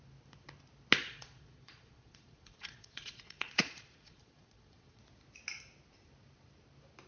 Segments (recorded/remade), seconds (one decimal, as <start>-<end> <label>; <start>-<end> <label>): 0.0-1.0 recorded; 1.0-5.0 remade; 5.0-7.1 recorded